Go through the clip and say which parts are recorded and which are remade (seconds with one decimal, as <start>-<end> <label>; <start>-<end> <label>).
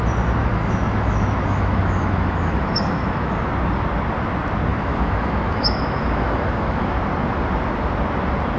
0.0-0.4 recorded; 0.4-3.3 remade; 3.3-4.7 recorded; 4.7-7.0 remade; 7.0-8.6 recorded